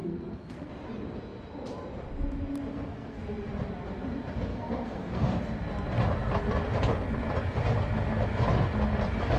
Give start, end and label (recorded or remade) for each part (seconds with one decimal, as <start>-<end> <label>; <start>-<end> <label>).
0.0-0.7 remade; 0.7-2.7 recorded; 2.7-3.2 remade; 3.2-4.5 recorded; 4.5-5.3 remade; 5.3-9.4 recorded